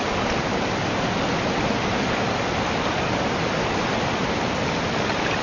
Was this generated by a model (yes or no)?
no